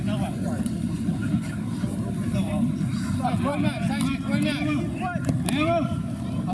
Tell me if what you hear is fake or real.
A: real